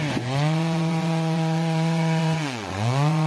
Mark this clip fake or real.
fake